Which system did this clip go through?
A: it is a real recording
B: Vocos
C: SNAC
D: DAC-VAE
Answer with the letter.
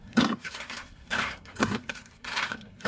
C